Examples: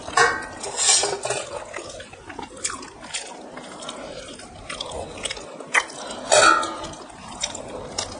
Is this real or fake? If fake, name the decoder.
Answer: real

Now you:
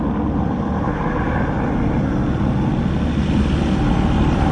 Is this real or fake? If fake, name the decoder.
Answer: real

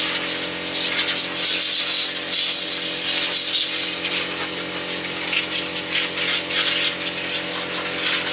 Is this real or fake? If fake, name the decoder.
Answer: real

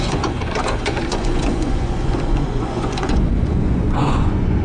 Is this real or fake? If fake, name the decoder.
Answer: fake, vocoder, Vocos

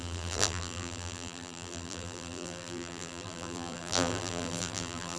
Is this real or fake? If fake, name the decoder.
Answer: fake, vocoder, BigVGAN v2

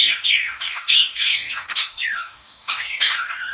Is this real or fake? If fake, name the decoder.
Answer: fake, codec, DAC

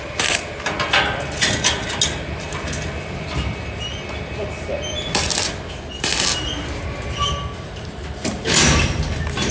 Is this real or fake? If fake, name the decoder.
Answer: real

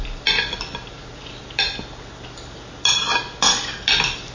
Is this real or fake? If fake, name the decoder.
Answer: real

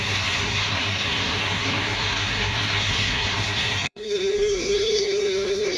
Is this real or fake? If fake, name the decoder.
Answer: fake, codec, SNAC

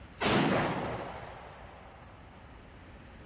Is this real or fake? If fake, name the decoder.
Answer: real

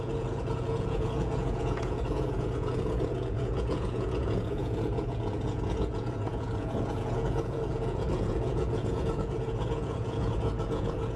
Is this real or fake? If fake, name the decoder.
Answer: fake, vocoder, Vocos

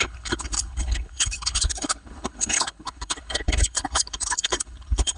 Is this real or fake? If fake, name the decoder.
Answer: fake, codec, HILCodec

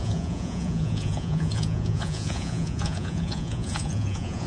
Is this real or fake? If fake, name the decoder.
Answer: fake, vocoder, Vocos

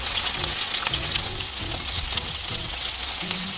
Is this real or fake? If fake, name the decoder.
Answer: fake, vocoder, WaveNeXt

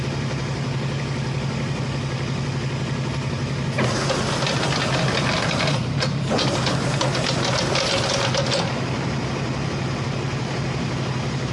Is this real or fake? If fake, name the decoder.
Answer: real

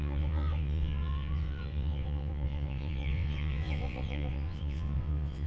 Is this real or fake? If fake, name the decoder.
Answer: fake, vocoder, WaveNeXt